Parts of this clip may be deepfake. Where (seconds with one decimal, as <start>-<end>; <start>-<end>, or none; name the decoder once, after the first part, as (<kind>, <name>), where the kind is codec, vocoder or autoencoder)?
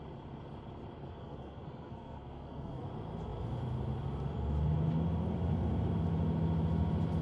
1.0-2.8 (codec, SNAC)